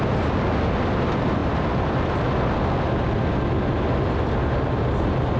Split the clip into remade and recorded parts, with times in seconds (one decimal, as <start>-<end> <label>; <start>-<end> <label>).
0.0-5.4 recorded